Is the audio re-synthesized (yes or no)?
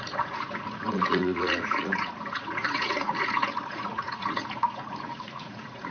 yes